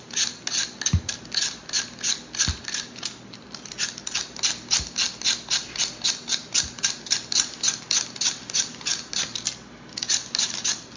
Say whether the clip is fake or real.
real